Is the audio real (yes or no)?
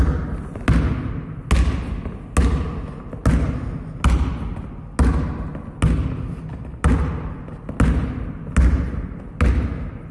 yes